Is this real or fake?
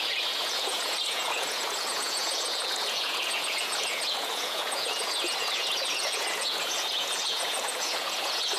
fake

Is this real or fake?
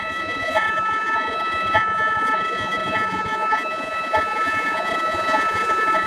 fake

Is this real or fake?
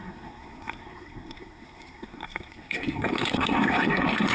fake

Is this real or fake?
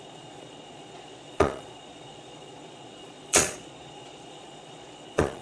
fake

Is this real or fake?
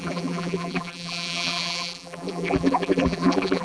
fake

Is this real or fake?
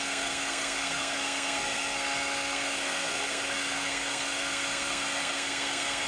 fake